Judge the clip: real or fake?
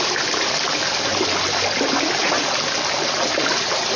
real